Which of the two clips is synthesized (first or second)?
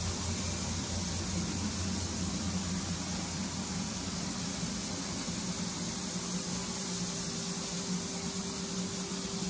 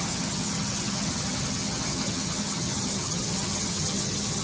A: second